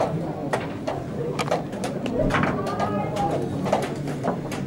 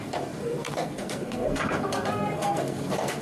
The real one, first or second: first